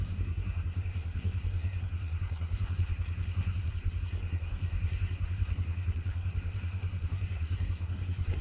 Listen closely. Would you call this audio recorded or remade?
remade